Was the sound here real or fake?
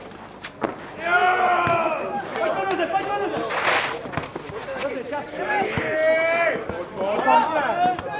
real